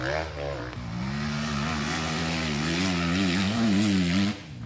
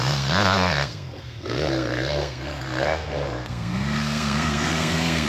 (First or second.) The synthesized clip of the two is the second